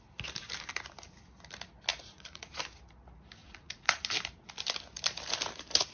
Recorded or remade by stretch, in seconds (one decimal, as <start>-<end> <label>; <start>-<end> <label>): 0.0-1.9 recorded; 1.9-2.6 remade; 2.6-3.4 recorded; 3.4-4.0 remade; 4.0-5.9 recorded